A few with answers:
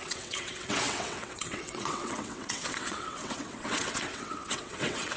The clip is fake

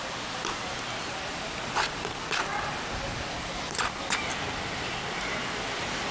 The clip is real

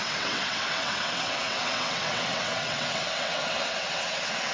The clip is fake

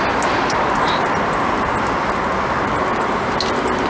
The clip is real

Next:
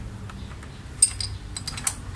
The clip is real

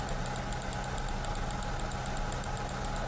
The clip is real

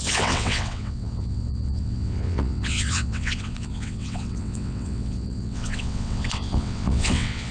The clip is fake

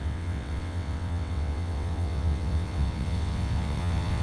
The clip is fake